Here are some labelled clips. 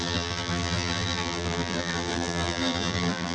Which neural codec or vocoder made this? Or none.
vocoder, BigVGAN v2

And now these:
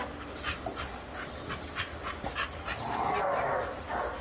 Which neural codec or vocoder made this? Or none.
none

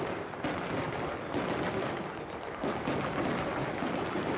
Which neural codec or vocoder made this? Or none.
none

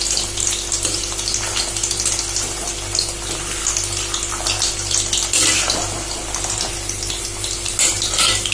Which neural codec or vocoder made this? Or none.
none